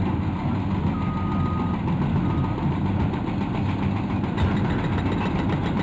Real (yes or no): yes